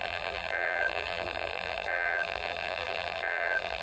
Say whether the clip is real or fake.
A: fake